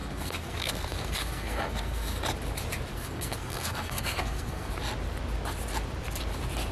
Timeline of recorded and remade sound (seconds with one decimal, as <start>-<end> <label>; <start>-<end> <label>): 0.0-2.2 remade; 2.2-2.9 recorded; 2.9-4.7 remade; 4.7-6.7 recorded